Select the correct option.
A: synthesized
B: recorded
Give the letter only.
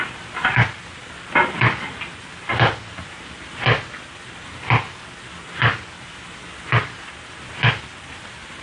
B